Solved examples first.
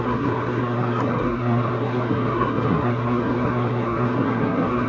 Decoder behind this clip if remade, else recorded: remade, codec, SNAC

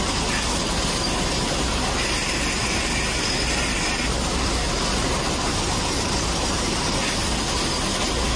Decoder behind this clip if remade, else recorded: recorded